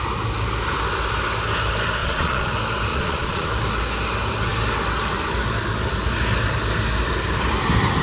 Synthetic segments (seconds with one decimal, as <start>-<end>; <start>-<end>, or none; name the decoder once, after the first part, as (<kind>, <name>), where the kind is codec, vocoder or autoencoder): 2.0-2.5 (vocoder, Vocos); 2.9-3.5